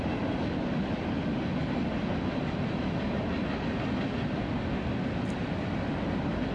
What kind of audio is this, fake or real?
real